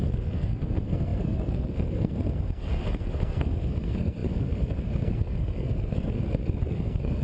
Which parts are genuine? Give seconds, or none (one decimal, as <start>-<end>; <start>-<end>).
none